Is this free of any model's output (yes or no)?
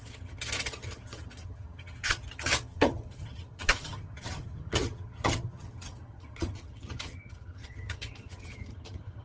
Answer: no